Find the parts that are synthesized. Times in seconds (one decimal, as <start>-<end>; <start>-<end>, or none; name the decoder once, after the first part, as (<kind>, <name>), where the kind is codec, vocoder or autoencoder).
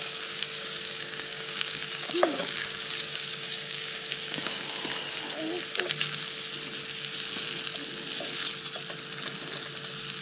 0.0-4.9 (codec, DAC)